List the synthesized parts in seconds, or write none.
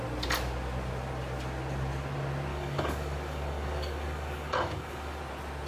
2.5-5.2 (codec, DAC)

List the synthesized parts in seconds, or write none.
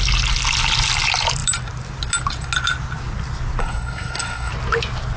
3.6-4.5 (codec, SNAC)